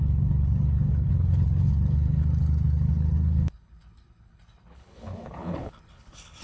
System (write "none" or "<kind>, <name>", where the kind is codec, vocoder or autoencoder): codec, HILCodec